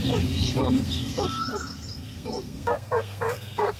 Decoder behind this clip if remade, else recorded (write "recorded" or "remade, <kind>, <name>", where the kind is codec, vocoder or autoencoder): remade, codec, SNAC